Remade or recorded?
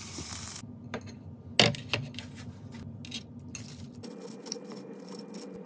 recorded